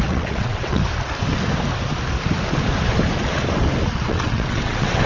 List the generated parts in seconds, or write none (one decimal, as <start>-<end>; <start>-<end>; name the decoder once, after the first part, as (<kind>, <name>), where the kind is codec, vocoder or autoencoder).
0.0-0.8 (vocoder, WaveNeXt); 3.9-5.1

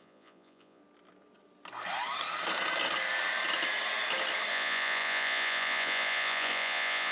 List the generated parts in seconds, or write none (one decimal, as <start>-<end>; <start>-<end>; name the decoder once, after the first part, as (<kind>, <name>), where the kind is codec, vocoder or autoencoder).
0.0-0.8 (vocoder, Vocos); 4.5-7.1